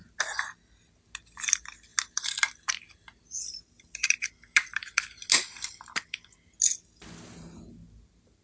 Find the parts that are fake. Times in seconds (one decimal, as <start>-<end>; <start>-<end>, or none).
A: none